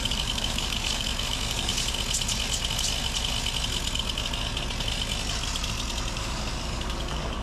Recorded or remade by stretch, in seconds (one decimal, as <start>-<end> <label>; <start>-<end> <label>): 0.0-1.7 remade; 1.7-6.1 recorded; 6.1-7.4 remade